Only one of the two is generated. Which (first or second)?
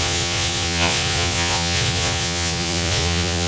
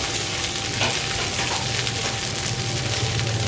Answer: first